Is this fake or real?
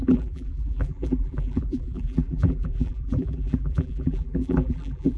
fake